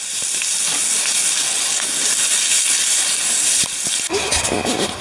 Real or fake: real